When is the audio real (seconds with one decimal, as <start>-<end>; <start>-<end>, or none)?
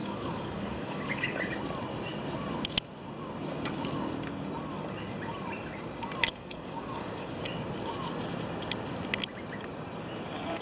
1.4-6.3; 7.4-10.6